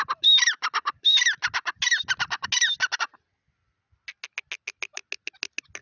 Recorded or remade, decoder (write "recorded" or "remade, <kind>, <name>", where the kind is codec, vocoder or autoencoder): recorded